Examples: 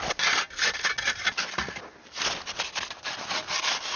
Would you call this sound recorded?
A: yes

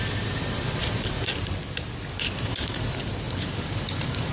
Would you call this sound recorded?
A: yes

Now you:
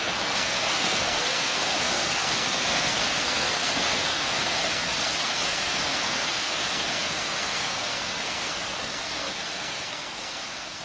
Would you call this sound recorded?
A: no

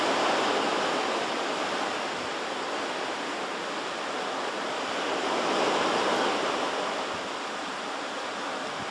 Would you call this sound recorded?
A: yes